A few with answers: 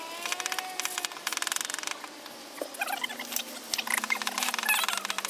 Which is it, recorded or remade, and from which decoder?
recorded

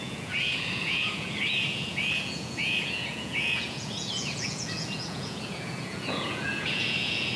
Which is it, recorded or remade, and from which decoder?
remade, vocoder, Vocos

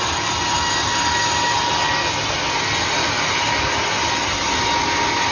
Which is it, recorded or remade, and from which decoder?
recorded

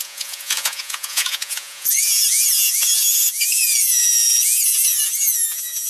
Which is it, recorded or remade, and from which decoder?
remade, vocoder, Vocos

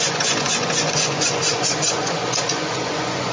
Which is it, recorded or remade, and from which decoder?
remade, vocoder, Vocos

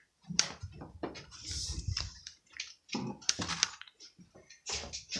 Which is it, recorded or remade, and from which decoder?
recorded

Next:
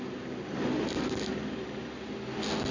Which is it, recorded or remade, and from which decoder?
recorded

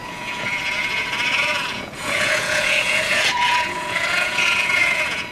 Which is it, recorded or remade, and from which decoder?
remade, vocoder, Vocos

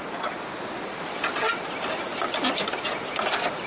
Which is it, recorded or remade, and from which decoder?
recorded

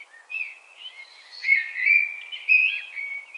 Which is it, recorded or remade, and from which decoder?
remade, vocoder, Vocos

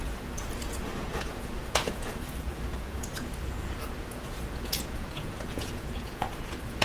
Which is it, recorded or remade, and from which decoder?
remade, vocoder, Vocos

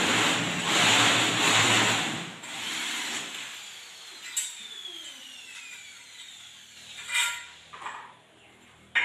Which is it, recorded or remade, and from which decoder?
recorded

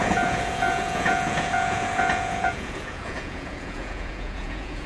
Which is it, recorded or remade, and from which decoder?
remade, vocoder, Vocos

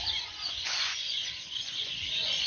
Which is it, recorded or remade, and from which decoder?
remade, vocoder, Vocos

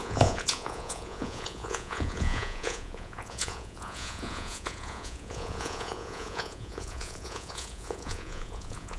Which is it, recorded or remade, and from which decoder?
remade, vocoder, Vocos